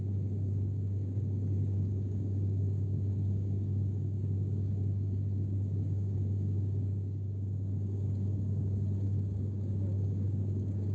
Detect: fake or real fake